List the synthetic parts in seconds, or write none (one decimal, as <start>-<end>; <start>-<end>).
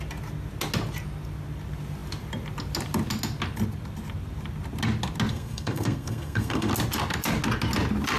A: 5.3-6.7